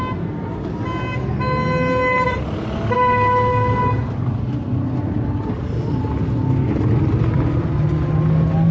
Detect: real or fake real